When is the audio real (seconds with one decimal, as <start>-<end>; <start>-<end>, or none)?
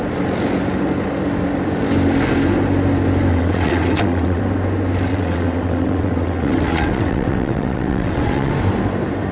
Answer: 0.0-3.3; 4.4-5.1; 8.5-9.3